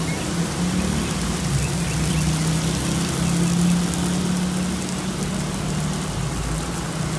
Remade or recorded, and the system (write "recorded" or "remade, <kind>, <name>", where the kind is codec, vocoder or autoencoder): recorded